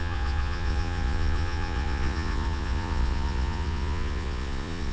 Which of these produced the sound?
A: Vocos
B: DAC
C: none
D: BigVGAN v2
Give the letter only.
A